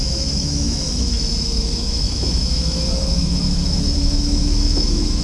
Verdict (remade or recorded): remade